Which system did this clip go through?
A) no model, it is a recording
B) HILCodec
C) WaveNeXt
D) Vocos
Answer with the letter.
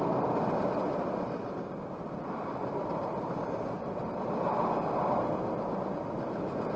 A